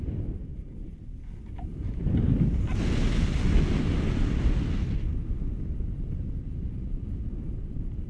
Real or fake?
real